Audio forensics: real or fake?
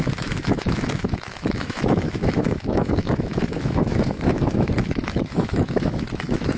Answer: fake